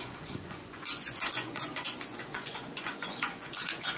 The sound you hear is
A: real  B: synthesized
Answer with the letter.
B